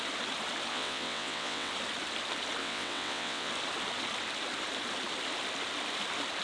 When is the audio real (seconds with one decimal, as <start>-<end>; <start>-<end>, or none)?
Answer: 0.0-0.7; 1.7-2.6; 3.5-6.4